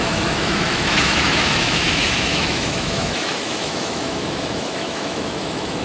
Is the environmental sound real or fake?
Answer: fake